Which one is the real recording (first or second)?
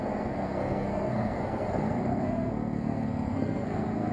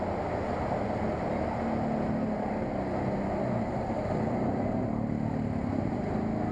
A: second